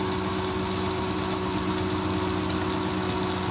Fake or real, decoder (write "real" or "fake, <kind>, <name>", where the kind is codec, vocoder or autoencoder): real